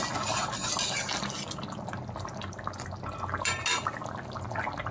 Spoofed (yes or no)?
no